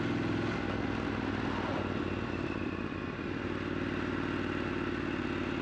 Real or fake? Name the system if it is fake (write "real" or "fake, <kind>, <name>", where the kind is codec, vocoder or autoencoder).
real